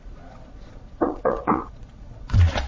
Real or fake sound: fake